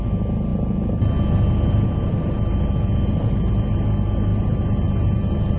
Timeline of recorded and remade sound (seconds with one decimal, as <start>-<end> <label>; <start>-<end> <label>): 0.0-5.6 recorded